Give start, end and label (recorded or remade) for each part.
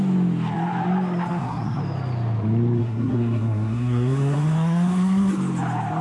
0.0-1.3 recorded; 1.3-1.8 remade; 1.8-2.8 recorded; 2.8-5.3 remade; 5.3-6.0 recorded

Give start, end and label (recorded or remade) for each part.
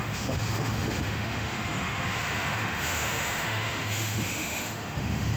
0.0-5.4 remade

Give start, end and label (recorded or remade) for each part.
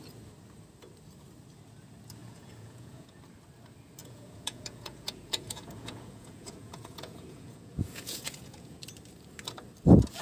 0.0-2.2 recorded; 2.2-3.2 remade; 3.2-4.0 recorded; 4.0-8.8 remade; 8.8-10.2 recorded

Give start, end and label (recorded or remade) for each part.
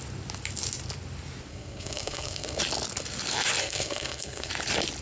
0.0-1.5 recorded; 1.5-2.6 remade; 2.6-3.6 recorded; 3.6-4.5 remade; 4.5-5.0 recorded